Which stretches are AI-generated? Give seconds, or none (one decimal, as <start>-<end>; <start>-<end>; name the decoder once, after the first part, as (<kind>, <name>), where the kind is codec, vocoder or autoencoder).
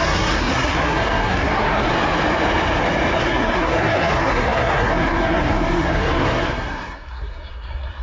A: 0.0-1.9 (codec, SNAC); 3.2-8.0